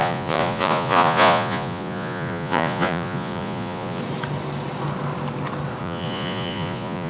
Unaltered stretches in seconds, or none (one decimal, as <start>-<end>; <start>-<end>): 4.0-5.8